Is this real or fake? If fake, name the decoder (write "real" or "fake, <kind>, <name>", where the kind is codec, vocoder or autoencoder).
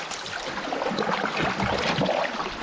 real